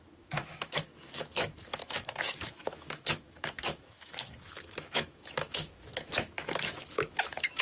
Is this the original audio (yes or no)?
no